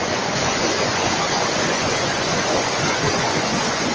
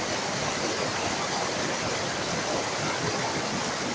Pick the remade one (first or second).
first